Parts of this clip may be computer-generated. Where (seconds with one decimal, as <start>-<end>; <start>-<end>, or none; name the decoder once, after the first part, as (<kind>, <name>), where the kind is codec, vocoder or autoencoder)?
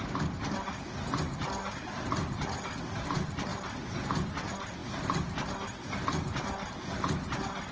none